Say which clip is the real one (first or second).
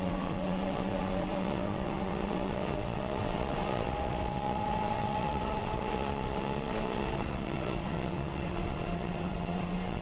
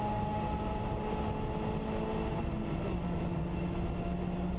second